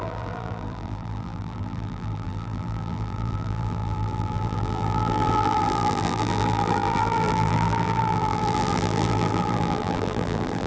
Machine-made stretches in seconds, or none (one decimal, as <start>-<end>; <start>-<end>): 0.0-10.7